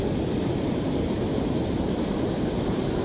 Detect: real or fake real